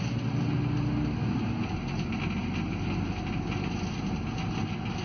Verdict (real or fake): real